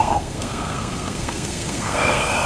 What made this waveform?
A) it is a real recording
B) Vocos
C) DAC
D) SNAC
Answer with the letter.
D